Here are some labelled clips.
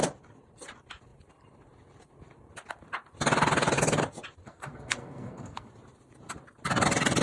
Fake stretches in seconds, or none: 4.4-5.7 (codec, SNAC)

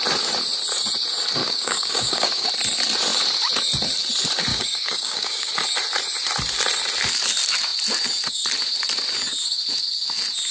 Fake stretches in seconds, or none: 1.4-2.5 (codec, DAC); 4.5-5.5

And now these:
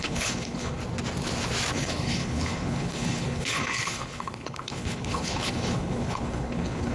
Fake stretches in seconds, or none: 0.0-0.8 (codec, HILCodec); 1.7-6.9